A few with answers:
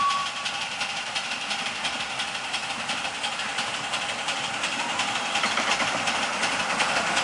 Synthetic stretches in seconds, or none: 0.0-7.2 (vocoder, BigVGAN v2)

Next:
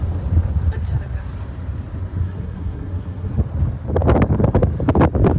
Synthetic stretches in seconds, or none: 2.2-3.3 (codec, SNAC)

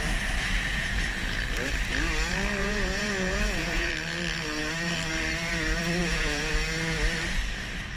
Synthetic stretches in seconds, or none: 0.7-1.4 (vocoder, Vocos); 2.6-3.9; 6.0-6.5